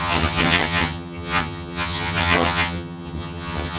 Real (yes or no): no